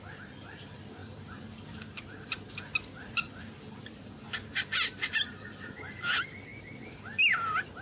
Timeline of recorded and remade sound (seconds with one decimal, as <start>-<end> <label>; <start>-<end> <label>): 0.0-7.8 recorded

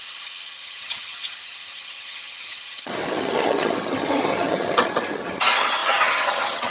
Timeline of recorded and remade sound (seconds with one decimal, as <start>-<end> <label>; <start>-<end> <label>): 0.0-6.7 remade

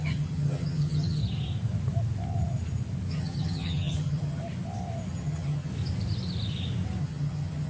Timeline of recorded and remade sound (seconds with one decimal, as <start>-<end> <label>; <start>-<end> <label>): 0.0-1.2 remade; 1.2-3.1 recorded; 3.1-4.4 remade; 4.4-5.1 recorded; 5.1-5.7 remade; 5.7-7.0 recorded; 7.0-7.7 remade

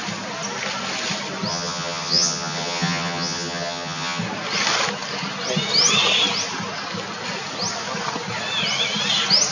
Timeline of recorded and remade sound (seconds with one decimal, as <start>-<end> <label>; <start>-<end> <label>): 0.0-1.5 recorded; 1.5-4.2 remade; 4.2-9.5 recorded

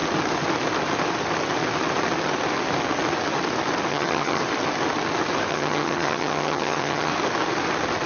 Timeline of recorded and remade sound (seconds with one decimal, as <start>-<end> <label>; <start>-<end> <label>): 0.0-3.9 recorded; 3.9-4.4 remade; 4.4-5.5 recorded; 5.5-7.1 remade; 7.1-8.1 recorded

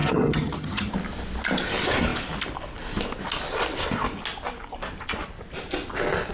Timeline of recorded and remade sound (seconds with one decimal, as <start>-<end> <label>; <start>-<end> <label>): 0.0-0.9 remade; 0.9-6.3 recorded

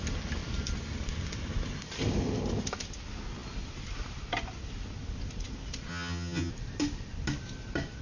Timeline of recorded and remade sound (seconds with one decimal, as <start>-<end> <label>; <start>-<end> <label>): 0.0-5.9 recorded; 5.9-6.5 remade; 6.5-8.0 recorded

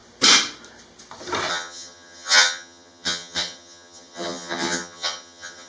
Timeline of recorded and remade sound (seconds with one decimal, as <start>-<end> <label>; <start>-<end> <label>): 0.0-1.5 recorded; 1.5-5.7 remade